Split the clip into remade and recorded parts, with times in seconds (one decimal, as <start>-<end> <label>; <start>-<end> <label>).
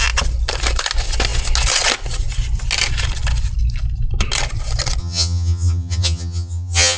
0.0-5.0 recorded; 5.0-7.0 remade